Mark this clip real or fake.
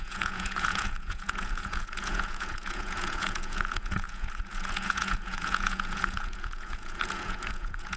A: fake